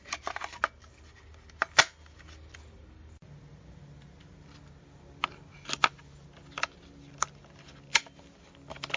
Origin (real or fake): real